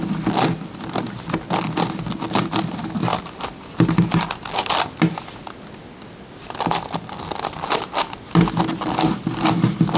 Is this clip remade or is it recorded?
recorded